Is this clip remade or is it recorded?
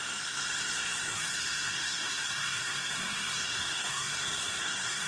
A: remade